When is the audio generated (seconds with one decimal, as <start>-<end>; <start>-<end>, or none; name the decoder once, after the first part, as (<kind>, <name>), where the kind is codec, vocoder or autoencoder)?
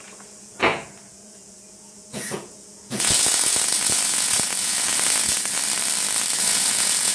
0.0-5.6 (vocoder, Vocos); 6.4-7.1